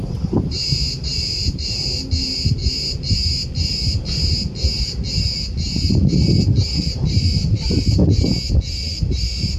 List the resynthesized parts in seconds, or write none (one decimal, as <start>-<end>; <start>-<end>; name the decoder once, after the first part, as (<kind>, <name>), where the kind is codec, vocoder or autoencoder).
0.0-2.6 (vocoder, BigVGAN v2); 6.8-8.0; 8.8-9.6